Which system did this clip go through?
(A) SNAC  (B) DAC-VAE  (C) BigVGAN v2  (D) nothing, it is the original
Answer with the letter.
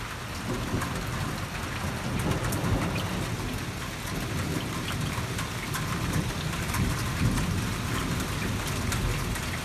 D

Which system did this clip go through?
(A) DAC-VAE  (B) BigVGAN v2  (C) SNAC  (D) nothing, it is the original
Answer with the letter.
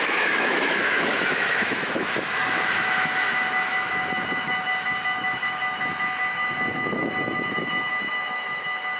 A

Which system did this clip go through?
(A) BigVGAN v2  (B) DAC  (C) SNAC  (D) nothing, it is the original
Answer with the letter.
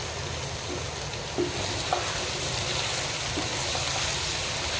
D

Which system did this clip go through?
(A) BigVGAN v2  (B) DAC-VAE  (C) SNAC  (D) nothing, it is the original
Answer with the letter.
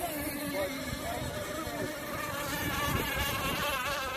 D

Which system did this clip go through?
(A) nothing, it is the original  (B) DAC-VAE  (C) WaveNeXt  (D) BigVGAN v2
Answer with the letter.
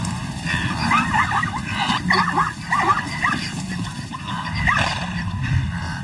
D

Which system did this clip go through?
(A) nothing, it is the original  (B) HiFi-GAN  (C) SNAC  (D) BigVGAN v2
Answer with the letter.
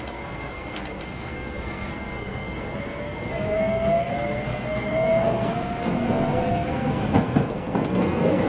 C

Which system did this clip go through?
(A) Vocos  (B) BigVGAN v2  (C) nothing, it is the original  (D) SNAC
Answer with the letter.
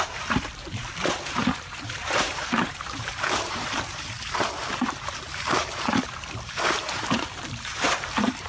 B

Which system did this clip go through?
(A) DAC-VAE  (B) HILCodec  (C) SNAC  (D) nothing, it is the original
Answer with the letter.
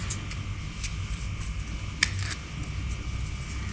D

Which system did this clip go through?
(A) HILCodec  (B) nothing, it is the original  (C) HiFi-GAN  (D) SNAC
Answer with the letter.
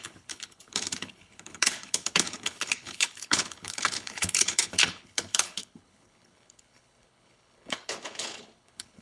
A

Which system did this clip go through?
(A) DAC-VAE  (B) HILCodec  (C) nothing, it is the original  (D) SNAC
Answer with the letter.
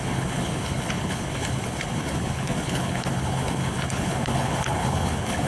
B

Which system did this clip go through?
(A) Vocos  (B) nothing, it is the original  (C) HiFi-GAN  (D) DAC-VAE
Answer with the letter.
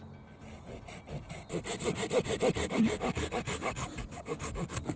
B